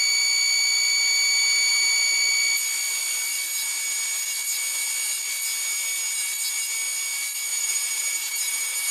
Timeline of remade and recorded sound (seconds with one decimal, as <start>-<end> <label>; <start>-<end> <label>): 0.0-7.5 recorded; 7.5-8.9 remade